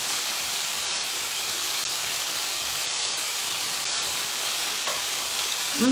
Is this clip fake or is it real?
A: fake